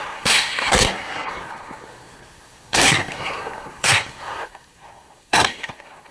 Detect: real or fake fake